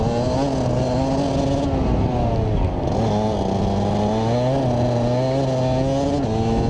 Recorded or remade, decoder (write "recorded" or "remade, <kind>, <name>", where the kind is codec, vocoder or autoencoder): recorded